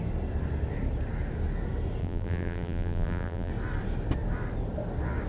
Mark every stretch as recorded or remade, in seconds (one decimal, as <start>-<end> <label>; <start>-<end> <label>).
0.0-2.0 recorded; 2.0-3.5 remade; 3.5-5.3 recorded